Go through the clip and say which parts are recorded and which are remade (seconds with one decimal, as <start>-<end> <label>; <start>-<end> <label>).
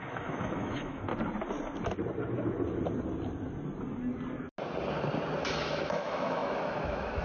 0.0-1.1 remade; 1.1-5.4 recorded; 5.4-7.2 remade